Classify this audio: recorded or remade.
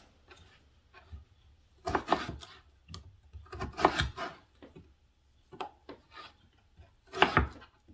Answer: recorded